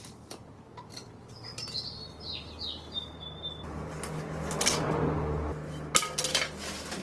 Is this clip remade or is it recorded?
recorded